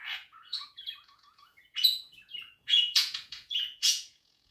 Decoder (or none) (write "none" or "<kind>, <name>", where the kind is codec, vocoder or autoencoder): vocoder, Vocos